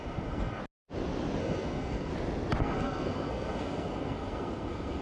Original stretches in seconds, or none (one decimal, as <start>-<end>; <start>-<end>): 0.6-1.4; 2.1-2.6

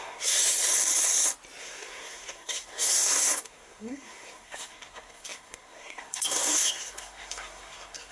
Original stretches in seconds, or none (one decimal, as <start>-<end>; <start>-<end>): 0.4-1.6

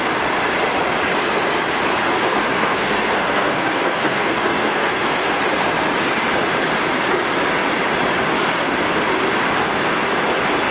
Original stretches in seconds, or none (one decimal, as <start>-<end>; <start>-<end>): 0.0-2.1; 5.4-10.7

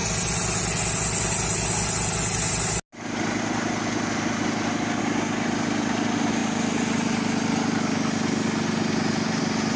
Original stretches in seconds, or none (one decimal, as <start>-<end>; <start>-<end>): 0.0-9.8

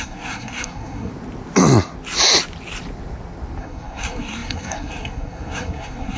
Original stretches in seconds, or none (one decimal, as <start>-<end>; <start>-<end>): 1.1-3.6

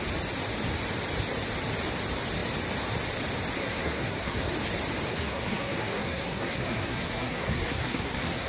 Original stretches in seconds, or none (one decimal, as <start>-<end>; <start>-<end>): 0.0-3.6; 4.5-5.1

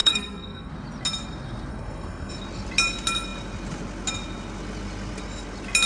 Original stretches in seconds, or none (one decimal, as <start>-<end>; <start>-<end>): 0.7-1.7; 2.3-5.9